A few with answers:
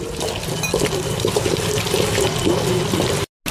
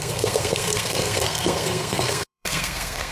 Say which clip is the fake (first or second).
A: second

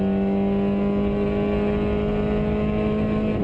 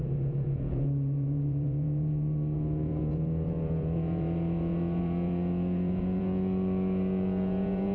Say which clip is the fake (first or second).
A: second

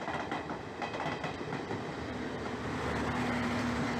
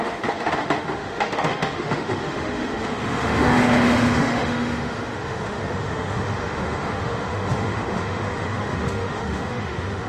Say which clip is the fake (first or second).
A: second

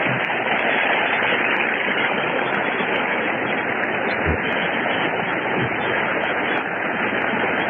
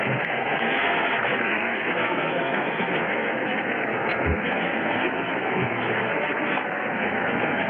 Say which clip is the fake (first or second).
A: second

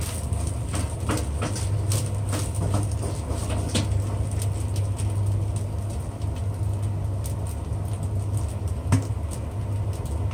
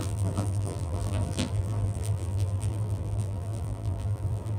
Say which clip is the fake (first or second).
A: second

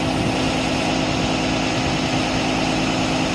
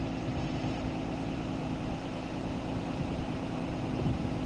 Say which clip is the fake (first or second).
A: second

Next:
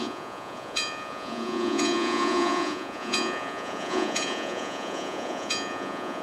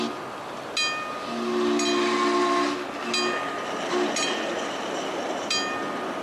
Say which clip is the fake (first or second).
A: first